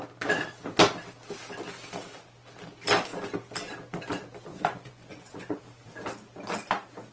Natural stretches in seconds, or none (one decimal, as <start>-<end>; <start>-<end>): 0.0-4.5; 5.6-7.1